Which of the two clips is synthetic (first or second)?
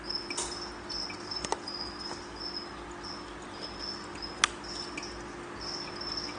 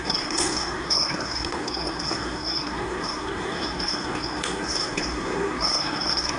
second